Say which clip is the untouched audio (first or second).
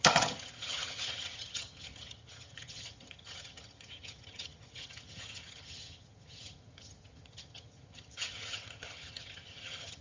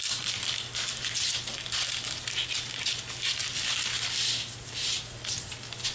second